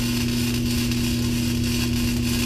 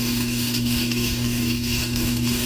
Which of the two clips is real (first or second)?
first